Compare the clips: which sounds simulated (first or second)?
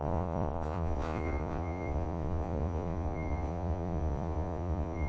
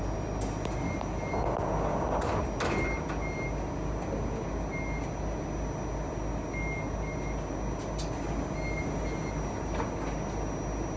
first